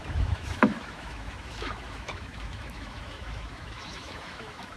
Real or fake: fake